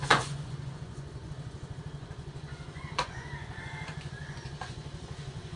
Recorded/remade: remade